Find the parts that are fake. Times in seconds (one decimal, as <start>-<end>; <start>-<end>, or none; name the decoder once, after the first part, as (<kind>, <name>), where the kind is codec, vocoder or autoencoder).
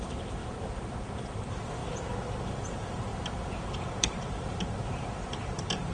0.0-1.8 (vocoder, BigVGAN v2); 2.5-3.1; 3.7-5.9